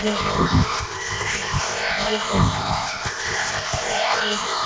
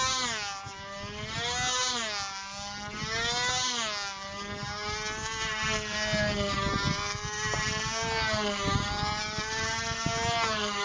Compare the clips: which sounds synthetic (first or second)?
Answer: first